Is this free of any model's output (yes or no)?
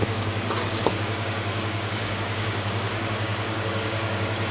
no